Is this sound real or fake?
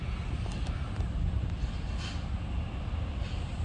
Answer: real